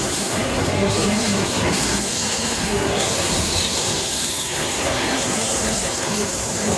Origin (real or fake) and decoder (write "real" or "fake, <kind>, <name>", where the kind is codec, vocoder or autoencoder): fake, codec, SNAC